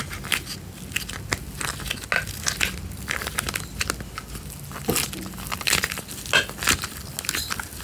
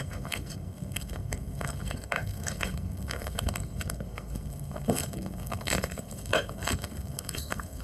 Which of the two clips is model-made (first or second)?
second